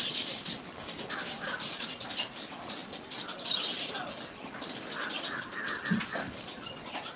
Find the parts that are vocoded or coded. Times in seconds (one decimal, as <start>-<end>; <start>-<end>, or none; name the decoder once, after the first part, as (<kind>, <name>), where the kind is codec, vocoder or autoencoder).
none

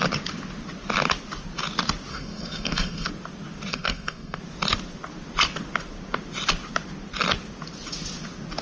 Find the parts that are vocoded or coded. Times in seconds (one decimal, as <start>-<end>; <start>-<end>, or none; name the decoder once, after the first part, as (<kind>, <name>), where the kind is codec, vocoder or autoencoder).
2.1-3.1 (codec, SNAC); 3.7-4.4

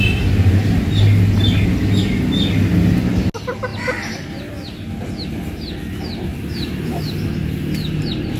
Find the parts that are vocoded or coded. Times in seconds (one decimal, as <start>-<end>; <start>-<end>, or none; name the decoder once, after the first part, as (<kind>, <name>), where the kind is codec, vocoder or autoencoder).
6.3-7.0 (vocoder, BigVGAN v2)

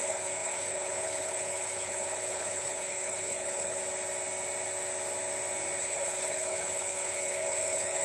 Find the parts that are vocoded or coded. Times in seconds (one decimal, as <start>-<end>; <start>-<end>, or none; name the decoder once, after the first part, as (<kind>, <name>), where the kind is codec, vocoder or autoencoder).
0.0-3.8 (codec, HILCodec); 5.8-8.0

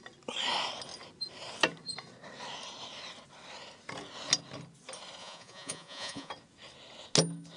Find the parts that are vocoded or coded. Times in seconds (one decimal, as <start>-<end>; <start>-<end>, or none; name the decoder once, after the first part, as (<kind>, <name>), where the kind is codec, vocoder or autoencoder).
5.2-6.3 (vocoder, Vocos)

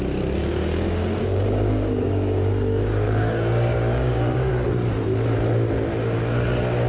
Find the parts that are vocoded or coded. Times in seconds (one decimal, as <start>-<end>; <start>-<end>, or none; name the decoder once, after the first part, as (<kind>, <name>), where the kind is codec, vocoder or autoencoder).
0.4-4.5 (codec, DAC)

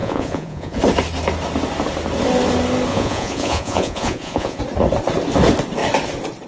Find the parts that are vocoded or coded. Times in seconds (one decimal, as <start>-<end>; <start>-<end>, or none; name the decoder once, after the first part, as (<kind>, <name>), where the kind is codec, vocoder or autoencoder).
0.0-0.8 (vocoder, Vocos); 2.9-4.6